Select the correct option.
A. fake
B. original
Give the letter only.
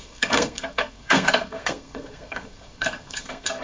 A